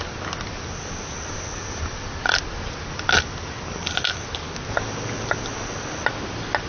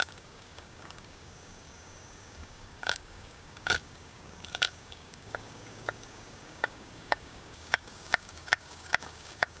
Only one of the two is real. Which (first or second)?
first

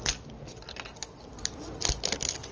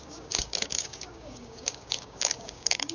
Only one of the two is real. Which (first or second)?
first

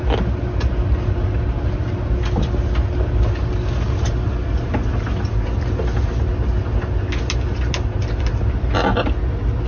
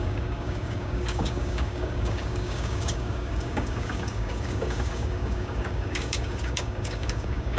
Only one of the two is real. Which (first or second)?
first